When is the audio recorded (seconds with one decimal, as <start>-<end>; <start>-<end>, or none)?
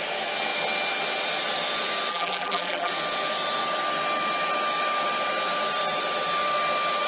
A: 0.0-2.1; 2.9-7.1